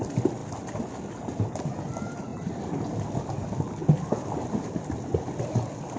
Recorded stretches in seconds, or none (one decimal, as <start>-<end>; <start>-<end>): 0.0-6.0